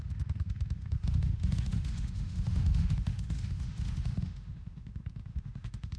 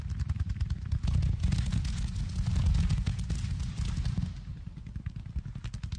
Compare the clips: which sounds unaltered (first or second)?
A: second